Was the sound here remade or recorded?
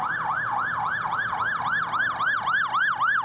recorded